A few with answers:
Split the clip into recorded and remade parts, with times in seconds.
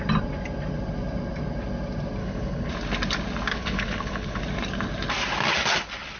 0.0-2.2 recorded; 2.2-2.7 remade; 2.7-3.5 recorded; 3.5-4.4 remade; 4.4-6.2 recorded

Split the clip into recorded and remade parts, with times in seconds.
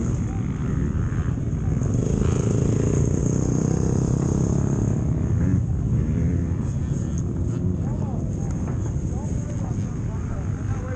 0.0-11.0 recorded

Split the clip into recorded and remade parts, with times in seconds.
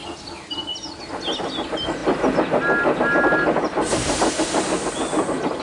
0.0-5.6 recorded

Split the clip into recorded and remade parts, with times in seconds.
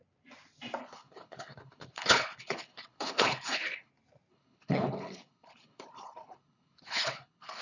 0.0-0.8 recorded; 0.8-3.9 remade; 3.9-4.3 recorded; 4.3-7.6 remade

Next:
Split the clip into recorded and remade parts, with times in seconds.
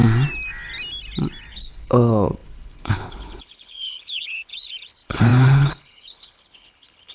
0.0-1.5 recorded; 1.5-7.1 remade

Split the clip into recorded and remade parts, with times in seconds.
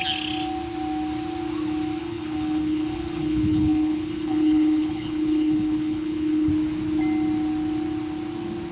0.0-2.0 recorded; 2.0-6.5 remade; 6.5-8.7 recorded